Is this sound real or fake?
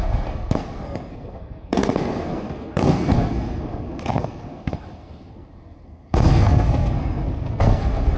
fake